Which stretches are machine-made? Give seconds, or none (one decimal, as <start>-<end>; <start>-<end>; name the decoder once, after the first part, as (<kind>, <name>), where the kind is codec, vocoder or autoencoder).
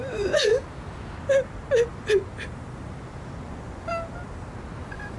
0.0-0.5 (vocoder, Vocos); 3.4-3.9; 4.8-5.2